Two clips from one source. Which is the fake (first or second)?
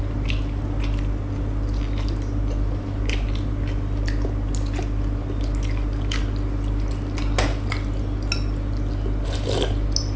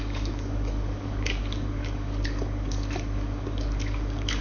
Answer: second